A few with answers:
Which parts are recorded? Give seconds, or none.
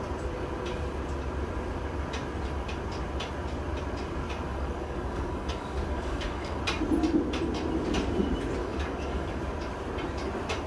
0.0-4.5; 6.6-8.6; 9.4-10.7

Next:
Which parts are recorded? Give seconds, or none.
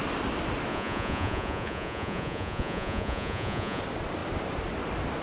0.0-0.7; 3.8-5.2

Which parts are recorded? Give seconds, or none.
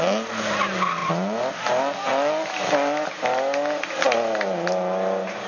0.0-5.5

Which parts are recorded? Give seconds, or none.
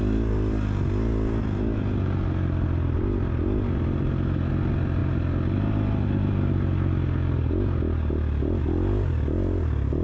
0.0-10.0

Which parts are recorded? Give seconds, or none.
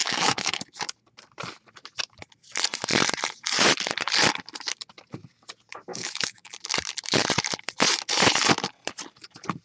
0.6-5.9; 6.5-9.6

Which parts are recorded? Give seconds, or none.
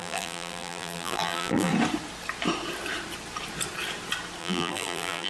1.7-4.4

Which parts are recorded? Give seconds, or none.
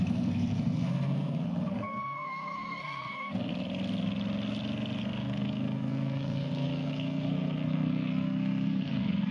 3.5-5.0